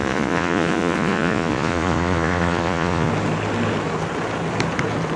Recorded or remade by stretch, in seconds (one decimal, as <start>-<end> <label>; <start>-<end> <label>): 0.0-3.1 remade; 3.1-5.2 recorded